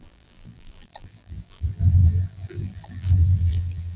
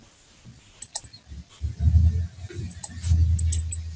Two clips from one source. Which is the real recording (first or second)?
second